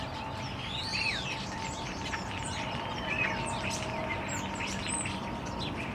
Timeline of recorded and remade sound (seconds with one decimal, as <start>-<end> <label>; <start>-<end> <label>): 0.0-0.9 recorded; 0.9-3.4 remade; 3.4-5.9 recorded